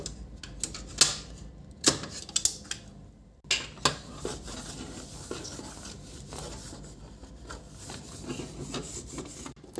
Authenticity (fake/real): real